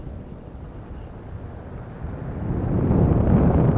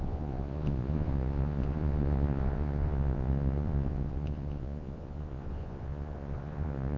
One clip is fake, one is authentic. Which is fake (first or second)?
second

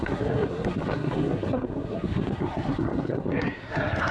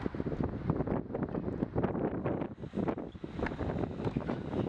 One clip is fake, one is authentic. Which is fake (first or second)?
first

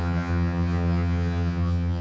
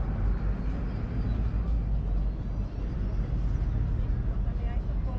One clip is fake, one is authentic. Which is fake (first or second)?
first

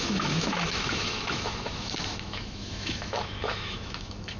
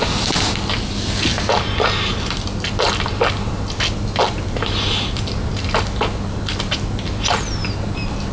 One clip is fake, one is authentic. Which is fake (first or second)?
first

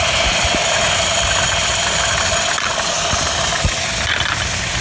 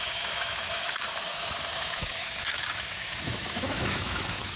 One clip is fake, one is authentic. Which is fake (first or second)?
second